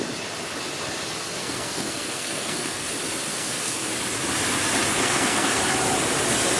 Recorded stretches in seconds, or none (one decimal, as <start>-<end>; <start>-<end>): 0.0-1.4; 2.9-3.3; 3.9-4.9; 5.6-6.6